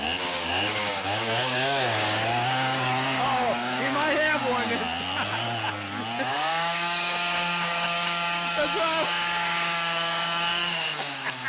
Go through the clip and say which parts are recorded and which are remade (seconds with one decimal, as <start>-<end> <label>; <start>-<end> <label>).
0.0-4.4 remade; 4.4-6.3 recorded; 6.3-11.5 remade